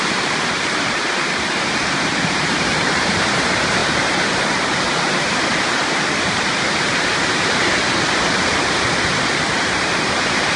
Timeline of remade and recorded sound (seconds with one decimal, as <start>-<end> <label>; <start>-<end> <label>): 0.0-10.6 remade